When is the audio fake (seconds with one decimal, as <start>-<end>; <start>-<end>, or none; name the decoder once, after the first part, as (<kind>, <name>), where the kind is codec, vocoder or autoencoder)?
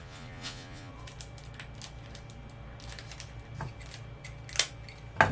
0.0-0.9 (vocoder, Vocos)